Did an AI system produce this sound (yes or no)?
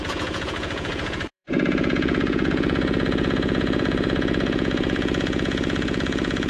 yes